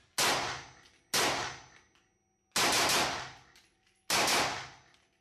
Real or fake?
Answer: real